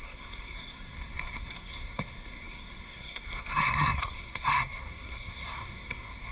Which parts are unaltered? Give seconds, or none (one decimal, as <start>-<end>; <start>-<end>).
none